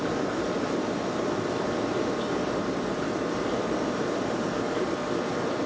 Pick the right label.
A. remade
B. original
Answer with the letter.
A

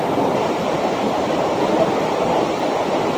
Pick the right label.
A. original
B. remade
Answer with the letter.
A